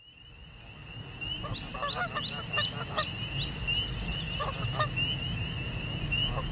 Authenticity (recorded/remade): recorded